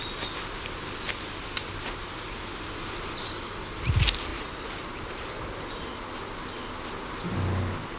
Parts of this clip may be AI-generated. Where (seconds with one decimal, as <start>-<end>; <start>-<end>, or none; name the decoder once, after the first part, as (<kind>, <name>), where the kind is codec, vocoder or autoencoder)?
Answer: 4.3-5.3 (vocoder, BigVGAN v2)